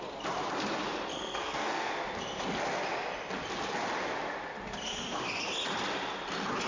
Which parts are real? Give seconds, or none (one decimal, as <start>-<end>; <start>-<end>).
0.0-1.1; 1.9-6.7